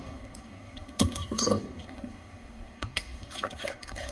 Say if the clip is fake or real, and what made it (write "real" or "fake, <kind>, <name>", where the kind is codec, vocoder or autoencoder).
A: fake, codec, SNAC